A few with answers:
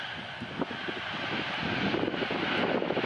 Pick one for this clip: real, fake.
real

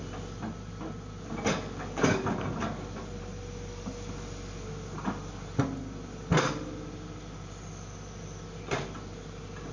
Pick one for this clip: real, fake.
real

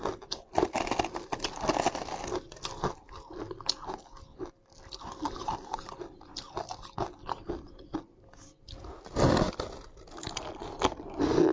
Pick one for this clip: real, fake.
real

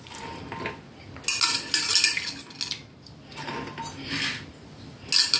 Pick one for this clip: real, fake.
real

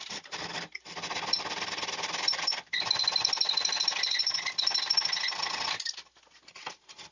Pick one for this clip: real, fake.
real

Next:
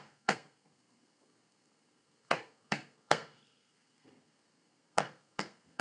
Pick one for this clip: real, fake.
fake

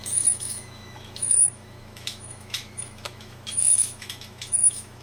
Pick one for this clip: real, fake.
fake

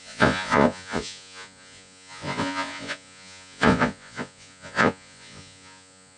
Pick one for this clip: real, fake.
fake